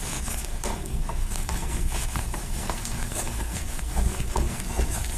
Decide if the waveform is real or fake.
fake